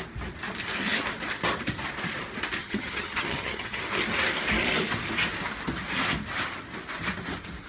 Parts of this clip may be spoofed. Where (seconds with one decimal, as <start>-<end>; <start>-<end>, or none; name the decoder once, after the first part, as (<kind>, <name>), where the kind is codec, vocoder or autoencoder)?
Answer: 2.6-3.8 (vocoder, HiFi-GAN)